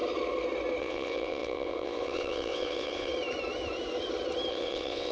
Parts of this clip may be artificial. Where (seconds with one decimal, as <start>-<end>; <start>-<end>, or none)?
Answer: 0.8-3.1; 4.5-5.1